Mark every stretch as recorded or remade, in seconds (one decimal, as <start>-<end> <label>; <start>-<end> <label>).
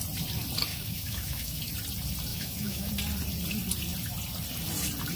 0.0-0.7 recorded; 0.7-1.6 remade; 1.6-2.3 recorded; 2.3-2.9 remade; 2.9-5.2 recorded